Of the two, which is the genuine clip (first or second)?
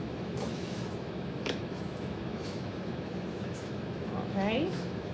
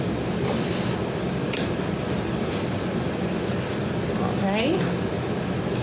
second